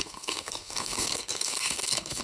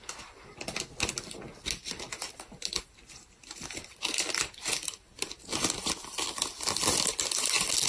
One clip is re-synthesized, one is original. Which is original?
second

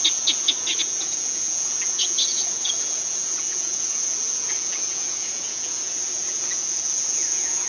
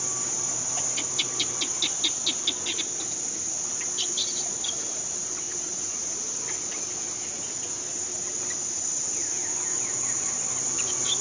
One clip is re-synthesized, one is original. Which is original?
second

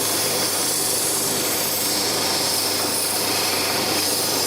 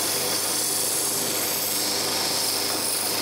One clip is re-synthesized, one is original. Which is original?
second